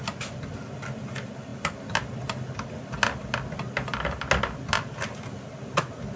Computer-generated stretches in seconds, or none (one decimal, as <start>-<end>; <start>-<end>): none